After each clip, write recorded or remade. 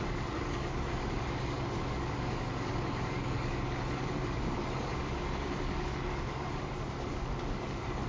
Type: remade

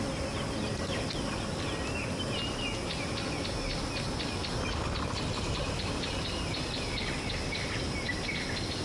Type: recorded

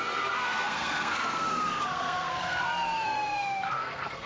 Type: remade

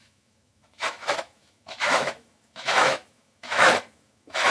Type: remade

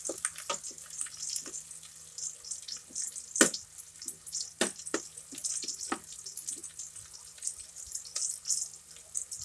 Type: recorded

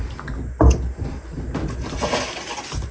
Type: recorded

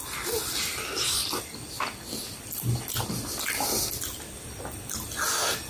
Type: recorded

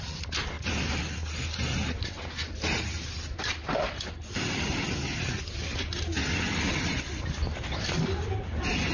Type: recorded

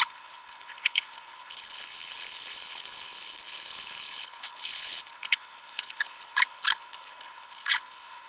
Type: remade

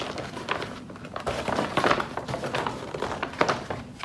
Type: remade